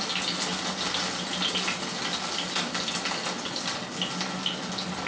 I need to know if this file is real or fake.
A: real